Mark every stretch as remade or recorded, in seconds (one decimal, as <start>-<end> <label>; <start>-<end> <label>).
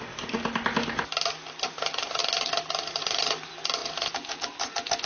0.0-5.1 recorded